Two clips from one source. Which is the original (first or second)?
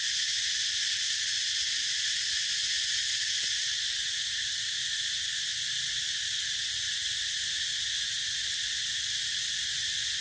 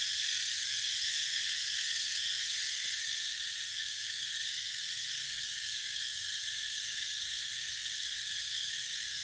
first